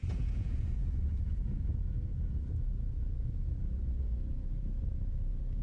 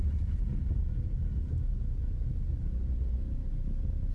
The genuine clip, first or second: second